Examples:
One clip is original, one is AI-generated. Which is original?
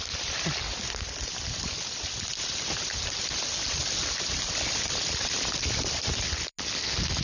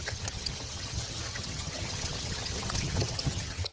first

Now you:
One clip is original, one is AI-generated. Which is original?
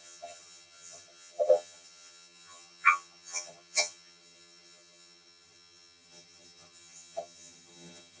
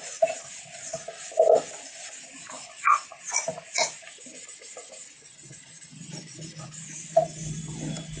second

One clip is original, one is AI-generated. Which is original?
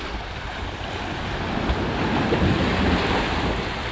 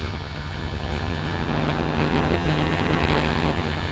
first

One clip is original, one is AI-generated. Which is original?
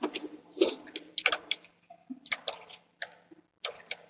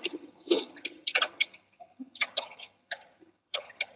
first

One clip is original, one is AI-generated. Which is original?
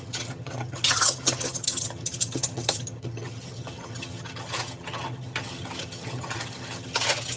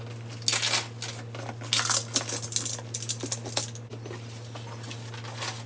second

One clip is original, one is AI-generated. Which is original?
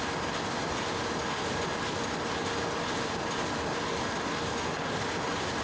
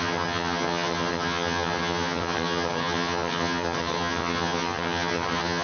first